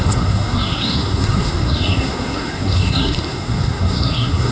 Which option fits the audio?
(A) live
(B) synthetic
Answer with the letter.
B